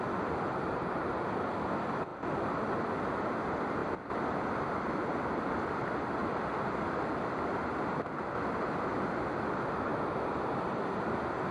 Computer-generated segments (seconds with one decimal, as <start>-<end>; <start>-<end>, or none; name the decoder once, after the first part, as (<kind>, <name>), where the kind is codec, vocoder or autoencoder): 2.1-3.4 (vocoder, BigVGAN v2); 3.8-4.5